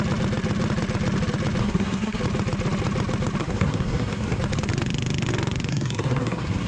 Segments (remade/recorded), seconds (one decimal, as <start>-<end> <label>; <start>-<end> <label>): 0.0-1.6 recorded; 1.6-2.2 remade; 2.2-3.4 recorded; 3.4-4.4 remade; 4.4-5.7 recorded; 5.7-6.7 remade